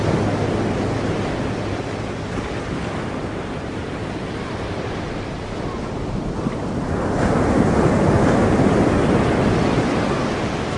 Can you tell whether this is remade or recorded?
recorded